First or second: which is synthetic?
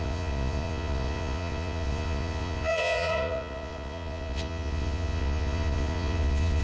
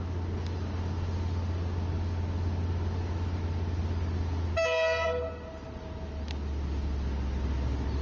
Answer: first